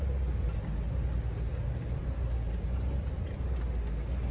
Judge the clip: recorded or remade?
recorded